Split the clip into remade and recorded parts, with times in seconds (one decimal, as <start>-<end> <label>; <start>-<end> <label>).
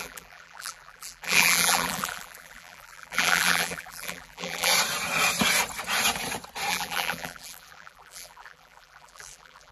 0.0-4.7 remade; 4.7-6.7 recorded; 6.7-9.7 remade